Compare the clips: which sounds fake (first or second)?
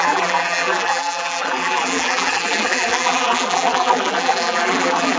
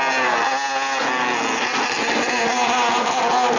first